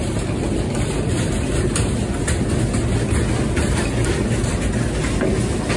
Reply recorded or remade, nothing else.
recorded